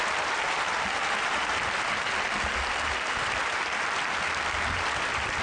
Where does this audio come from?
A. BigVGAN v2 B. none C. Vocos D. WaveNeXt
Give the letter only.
A